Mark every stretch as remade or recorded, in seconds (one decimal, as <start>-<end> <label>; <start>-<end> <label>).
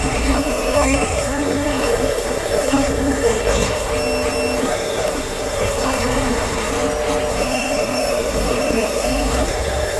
0.0-3.9 remade; 3.9-4.6 recorded; 4.6-6.7 remade; 6.7-7.3 recorded; 7.3-10.0 remade